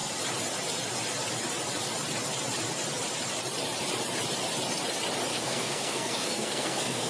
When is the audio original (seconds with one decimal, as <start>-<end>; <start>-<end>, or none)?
0.0-5.3

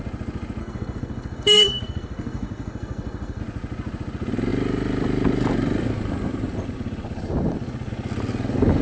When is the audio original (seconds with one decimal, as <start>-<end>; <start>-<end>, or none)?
0.0-0.6; 3.4-8.8

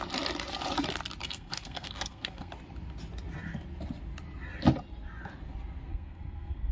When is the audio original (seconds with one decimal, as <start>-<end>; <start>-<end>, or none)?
0.0-1.2; 2.5-5.9